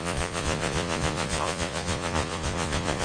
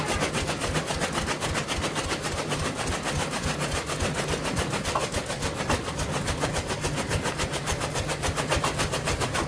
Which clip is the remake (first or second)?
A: first